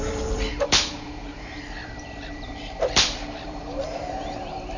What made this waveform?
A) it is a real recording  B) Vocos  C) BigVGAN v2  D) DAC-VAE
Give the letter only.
C